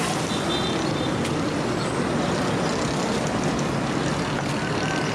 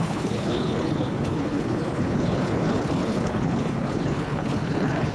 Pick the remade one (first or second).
second